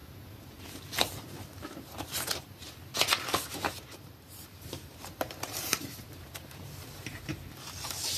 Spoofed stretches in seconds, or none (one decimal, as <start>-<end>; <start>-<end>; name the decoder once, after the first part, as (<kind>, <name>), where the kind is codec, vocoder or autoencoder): 0.0-8.2 (vocoder, BigVGAN v2)